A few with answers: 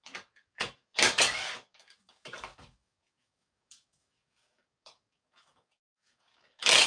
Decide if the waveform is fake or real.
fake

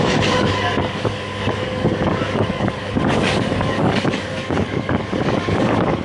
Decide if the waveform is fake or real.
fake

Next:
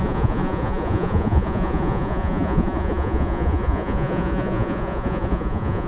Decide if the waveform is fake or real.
fake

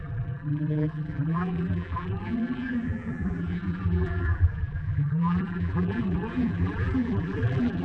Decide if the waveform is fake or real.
fake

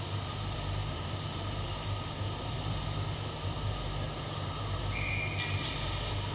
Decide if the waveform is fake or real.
real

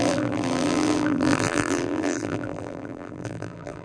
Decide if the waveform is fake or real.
fake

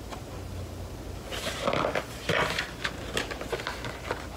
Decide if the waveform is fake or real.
real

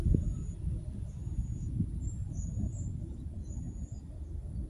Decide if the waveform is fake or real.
real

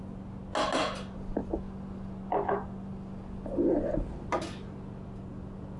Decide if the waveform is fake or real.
real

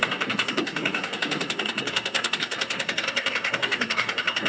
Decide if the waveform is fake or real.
fake